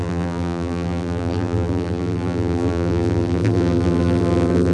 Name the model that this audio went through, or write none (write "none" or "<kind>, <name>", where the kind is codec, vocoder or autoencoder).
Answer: vocoder, BigVGAN v2